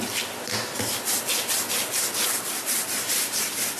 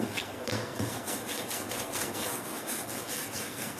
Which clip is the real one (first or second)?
first